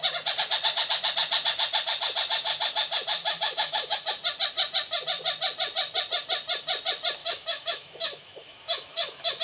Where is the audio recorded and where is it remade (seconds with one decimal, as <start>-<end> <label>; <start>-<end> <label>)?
0.0-3.2 recorded; 3.2-4.1 remade; 4.1-7.2 recorded; 7.2-9.4 remade